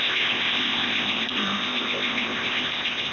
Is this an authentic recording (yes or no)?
no